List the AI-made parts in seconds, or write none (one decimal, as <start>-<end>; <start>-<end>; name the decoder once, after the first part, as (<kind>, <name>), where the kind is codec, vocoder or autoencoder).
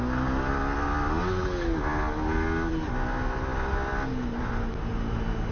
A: none